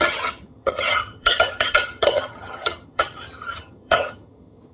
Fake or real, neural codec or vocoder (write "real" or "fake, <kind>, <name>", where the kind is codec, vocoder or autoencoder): fake, vocoder, HiFi-GAN